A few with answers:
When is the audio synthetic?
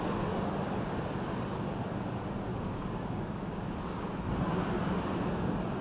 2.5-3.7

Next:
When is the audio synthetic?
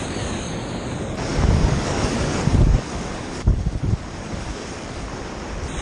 0.0-5.1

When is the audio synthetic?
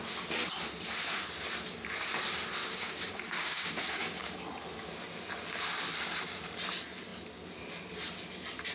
2.6-4.4